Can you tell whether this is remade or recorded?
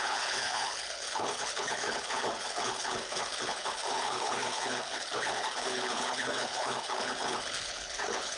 remade